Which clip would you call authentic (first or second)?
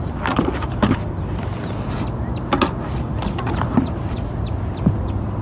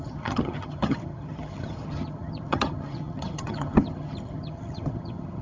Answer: first